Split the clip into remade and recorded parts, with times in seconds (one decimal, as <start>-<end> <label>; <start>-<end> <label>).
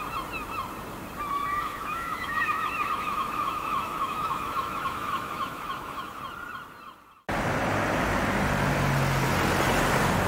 0.0-1.5 recorded; 1.5-6.2 remade; 6.2-10.3 recorded